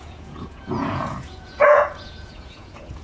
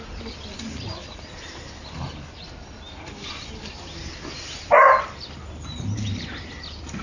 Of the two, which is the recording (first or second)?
second